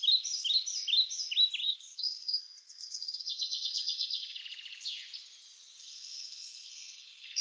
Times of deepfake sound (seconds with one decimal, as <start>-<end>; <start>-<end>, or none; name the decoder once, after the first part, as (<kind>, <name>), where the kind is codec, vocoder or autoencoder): 1.6-4.4 (codec, SNAC); 5.8-7.4

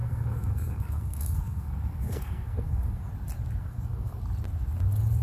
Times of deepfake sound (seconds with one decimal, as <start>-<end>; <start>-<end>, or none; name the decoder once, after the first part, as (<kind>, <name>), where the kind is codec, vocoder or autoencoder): 0.0-3.1 (codec, SNAC); 3.6-4.2

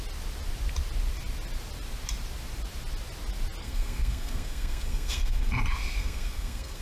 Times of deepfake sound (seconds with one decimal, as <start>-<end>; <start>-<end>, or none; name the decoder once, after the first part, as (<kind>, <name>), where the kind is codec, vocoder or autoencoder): 3.6-5.5 (codec, SNAC); 6.0-6.8

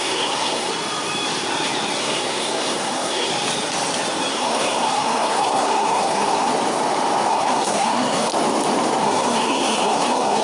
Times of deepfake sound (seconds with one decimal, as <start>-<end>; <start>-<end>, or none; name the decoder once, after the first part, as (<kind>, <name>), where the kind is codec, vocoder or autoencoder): 0.0-0.7 (codec, SNAC); 2.0-3.3; 4.3-6.5; 7.3-8.3; 9.0-10.4

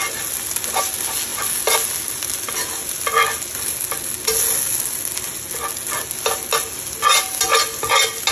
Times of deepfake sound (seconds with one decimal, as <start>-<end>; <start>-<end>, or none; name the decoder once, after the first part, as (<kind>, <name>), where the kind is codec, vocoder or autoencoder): none